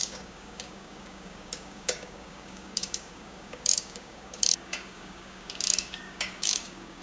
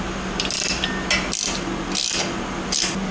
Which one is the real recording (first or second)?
second